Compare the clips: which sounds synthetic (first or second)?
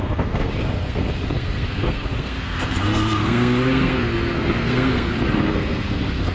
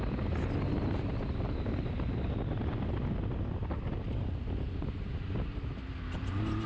first